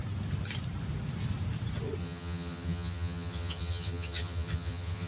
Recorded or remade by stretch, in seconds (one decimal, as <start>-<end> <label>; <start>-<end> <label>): 0.0-2.0 recorded; 2.0-5.1 remade